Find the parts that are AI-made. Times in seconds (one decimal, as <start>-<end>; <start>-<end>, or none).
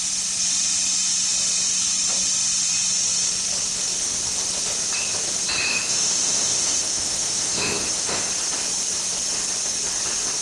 5.7-8.3